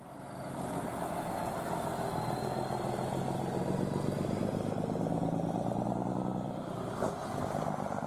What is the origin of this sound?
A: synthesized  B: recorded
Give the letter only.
B